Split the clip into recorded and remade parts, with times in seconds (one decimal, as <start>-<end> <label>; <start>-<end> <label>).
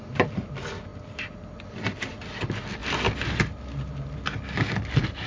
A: 0.0-5.3 recorded